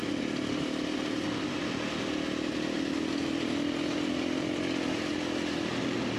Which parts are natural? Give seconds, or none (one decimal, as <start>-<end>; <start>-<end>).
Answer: 0.0-6.2